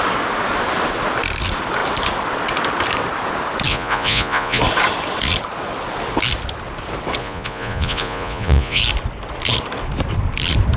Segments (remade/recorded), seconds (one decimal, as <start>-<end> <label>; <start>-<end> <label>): 0.0-3.7 recorded; 3.7-4.6 remade; 4.6-7.2 recorded; 7.2-8.8 remade; 8.8-10.8 recorded